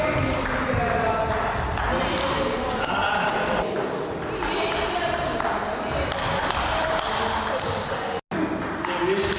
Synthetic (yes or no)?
no